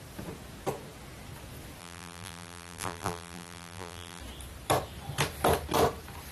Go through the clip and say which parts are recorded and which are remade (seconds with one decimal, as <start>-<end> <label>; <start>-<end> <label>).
0.0-1.8 recorded; 1.8-4.2 remade; 4.2-6.3 recorded